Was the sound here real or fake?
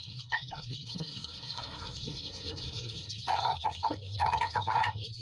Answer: fake